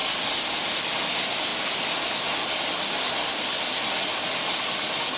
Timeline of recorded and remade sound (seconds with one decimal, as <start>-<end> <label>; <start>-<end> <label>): 0.0-5.2 recorded